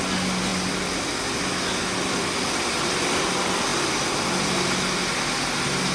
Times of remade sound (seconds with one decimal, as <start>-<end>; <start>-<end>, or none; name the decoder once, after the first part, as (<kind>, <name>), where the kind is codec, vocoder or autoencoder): none